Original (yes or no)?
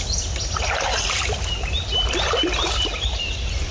yes